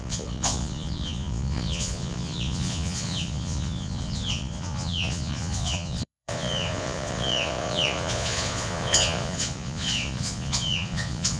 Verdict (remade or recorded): remade